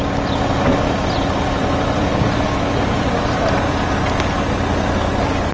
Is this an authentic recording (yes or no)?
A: yes